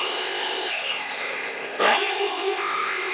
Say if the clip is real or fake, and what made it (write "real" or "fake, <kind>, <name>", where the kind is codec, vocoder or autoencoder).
fake, codec, ZipCodec